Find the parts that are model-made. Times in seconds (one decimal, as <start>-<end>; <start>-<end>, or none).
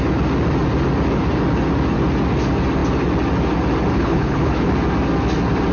3.9-4.7